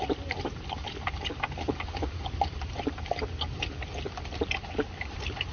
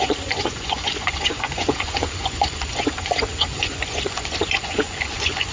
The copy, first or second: second